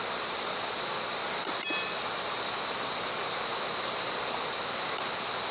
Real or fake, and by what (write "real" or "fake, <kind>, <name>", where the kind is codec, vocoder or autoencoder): real